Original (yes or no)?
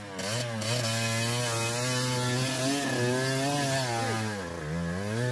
yes